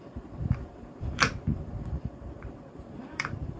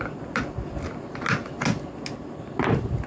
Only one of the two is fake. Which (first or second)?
first